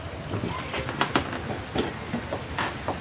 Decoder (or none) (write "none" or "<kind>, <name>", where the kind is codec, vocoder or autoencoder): none